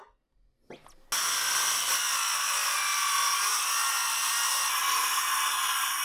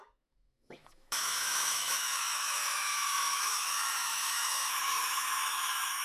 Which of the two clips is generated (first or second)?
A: second